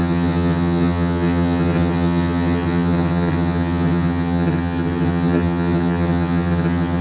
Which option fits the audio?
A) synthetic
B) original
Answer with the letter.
A